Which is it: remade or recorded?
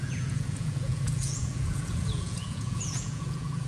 remade